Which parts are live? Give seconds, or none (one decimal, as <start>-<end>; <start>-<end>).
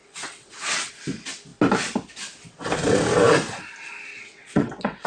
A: 0.9-4.1